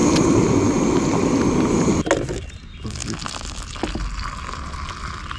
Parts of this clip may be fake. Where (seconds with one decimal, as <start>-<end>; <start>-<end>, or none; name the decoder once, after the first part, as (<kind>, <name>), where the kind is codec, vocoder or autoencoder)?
none